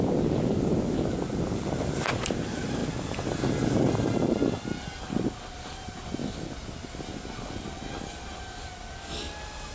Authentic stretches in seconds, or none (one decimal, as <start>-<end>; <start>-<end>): 0.0-9.7